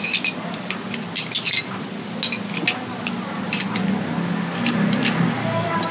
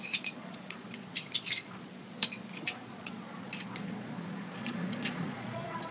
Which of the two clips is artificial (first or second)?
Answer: second